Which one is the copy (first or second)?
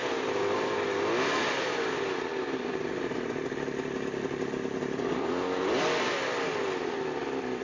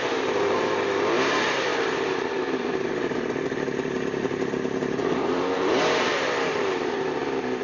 second